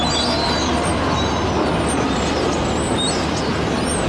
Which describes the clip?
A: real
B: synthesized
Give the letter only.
A